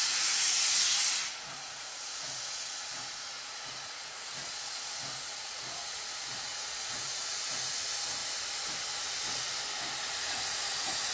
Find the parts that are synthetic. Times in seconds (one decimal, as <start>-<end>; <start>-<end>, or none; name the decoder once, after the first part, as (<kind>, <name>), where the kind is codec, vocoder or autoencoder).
0.0-8.2 (vocoder, Vocos); 10.1-11.1